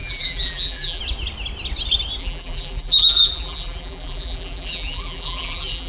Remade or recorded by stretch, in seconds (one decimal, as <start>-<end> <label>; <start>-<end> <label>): 0.0-1.0 remade; 1.0-2.2 recorded; 2.2-5.9 remade